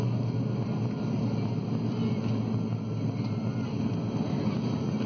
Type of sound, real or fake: real